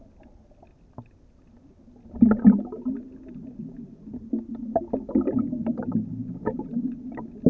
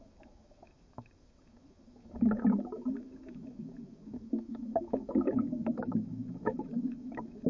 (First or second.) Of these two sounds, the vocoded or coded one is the second